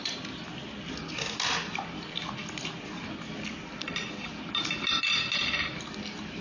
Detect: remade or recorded recorded